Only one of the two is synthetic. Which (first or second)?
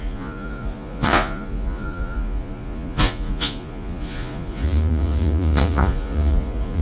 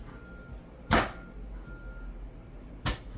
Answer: first